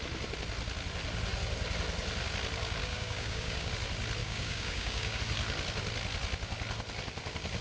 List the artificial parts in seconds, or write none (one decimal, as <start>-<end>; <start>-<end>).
2.8-3.7; 4.2-5.2